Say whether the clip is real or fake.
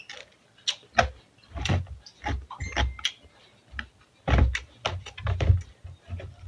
real